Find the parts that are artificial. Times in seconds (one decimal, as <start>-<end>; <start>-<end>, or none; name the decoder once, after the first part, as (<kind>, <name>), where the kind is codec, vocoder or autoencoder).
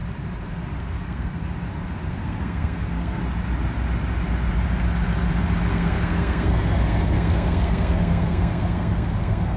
0.8-1.4 (codec, SNAC); 2.1-3.2; 5.7-9.6